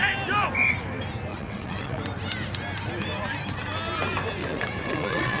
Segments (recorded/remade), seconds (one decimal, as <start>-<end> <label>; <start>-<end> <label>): 0.0-1.3 recorded; 1.3-2.0 remade; 2.0-4.4 recorded; 4.4-5.4 remade